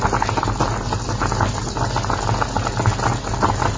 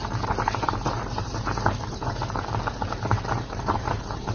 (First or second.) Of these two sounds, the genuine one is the first